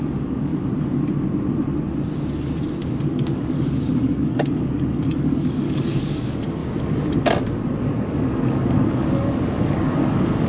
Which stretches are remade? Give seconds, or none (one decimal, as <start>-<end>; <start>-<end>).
0.0-0.5; 3.0-6.6; 7.8-10.5